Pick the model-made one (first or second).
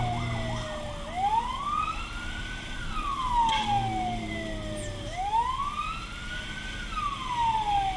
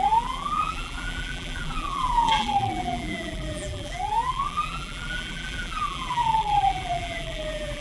second